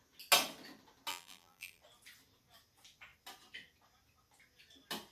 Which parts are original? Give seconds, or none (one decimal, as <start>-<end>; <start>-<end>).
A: 0.0-1.1; 1.8-5.1